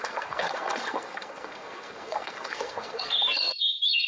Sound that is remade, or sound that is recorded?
remade